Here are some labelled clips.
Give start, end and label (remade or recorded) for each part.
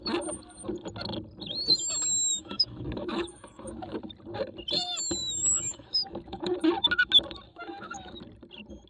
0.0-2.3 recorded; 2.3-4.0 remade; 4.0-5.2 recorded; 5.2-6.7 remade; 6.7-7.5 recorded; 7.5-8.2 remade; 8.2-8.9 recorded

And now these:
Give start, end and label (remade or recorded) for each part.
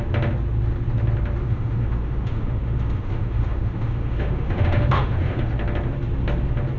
0.0-1.4 recorded; 1.4-5.5 remade; 5.5-6.8 recorded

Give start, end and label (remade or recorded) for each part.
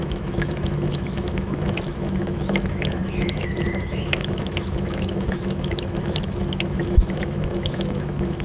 0.0-8.4 remade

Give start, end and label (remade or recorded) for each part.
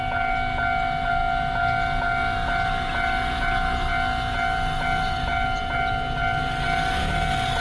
0.0-7.6 recorded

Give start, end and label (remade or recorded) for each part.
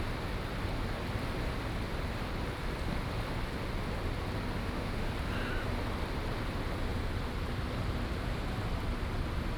0.0-4.6 recorded; 4.6-5.1 remade; 5.1-9.6 recorded